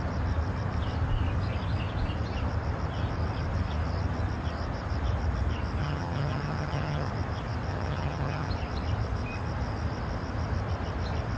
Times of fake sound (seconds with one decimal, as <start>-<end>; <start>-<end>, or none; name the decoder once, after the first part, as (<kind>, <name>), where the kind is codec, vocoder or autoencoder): 5.8-7.1 (vocoder, HiFi-GAN); 7.7-8.5